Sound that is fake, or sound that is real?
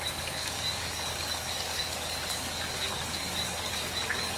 fake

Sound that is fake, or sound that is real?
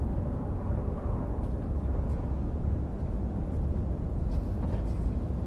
real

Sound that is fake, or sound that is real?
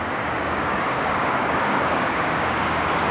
fake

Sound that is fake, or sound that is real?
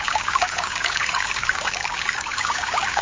fake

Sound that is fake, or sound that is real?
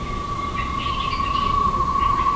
real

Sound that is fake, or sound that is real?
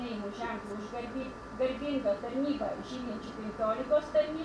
real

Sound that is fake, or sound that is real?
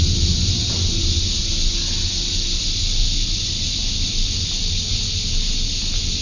real